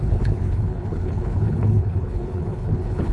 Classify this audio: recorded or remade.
remade